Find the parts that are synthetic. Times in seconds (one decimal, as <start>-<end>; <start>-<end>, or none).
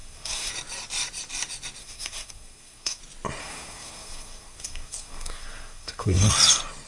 0.0-0.5; 1.8-3.0; 3.4-6.3